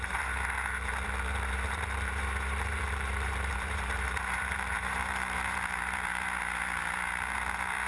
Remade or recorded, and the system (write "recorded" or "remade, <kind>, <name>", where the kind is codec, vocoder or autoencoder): remade, vocoder, BigVGAN v2